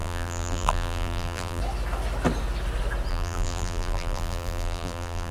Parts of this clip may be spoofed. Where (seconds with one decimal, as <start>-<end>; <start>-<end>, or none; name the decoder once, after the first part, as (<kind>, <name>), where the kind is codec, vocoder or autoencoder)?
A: 0.0-1.6 (vocoder, BigVGAN v2); 3.1-5.3